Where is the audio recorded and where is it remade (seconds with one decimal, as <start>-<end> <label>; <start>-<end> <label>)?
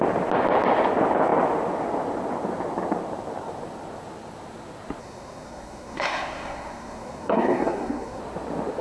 0.0-5.0 recorded; 5.0-8.2 remade; 8.2-8.8 recorded